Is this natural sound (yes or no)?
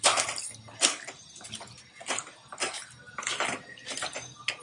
yes